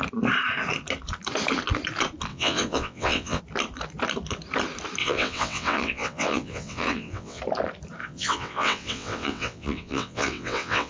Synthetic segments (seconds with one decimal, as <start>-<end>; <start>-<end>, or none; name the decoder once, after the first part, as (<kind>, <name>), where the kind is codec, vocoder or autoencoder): 2.3-3.4 (vocoder, WaveNeXt); 5.0-7.4; 8.0-10.9